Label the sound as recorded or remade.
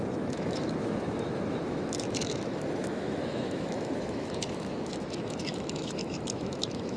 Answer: remade